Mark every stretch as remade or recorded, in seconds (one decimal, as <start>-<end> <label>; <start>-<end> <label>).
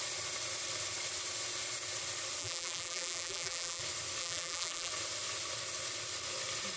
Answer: 0.0-2.4 recorded; 2.4-3.8 remade; 3.8-4.2 recorded; 4.2-4.9 remade; 4.9-6.8 recorded